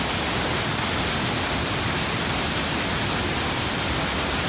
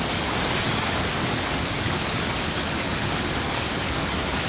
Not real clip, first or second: second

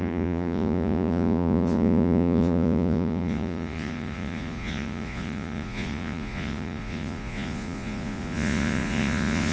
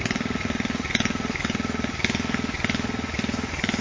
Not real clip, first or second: first